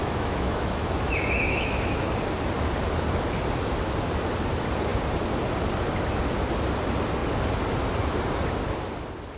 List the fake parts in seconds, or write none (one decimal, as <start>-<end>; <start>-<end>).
0.0-2.1